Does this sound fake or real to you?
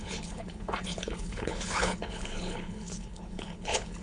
fake